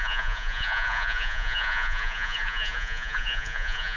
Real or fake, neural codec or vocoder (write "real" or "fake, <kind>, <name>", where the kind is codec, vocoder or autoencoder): fake, vocoder, Vocos